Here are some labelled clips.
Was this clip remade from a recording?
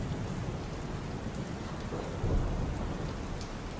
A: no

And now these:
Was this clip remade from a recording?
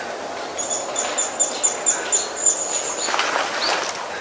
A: no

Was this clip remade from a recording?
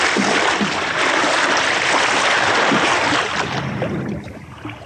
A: no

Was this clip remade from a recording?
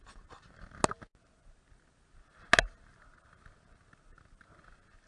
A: no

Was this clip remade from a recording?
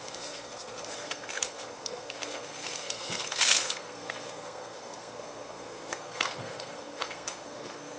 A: yes